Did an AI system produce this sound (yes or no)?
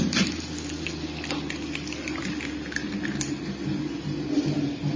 no